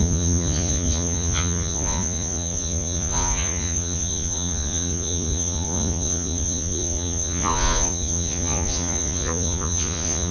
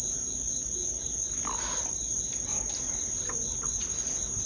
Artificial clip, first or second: first